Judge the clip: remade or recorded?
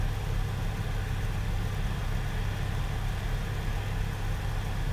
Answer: recorded